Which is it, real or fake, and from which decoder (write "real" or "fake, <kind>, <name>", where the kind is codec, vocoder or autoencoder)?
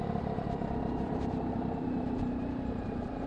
fake, vocoder, BigVGAN v2